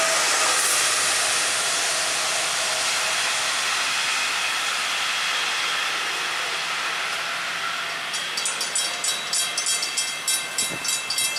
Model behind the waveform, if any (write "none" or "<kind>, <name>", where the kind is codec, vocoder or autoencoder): none